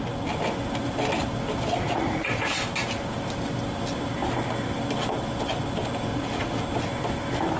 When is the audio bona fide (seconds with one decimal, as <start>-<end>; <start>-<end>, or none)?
0.0-1.8; 2.5-6.1; 6.6-7.6